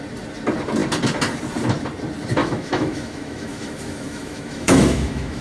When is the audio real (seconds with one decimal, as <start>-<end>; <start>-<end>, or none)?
0.0-2.4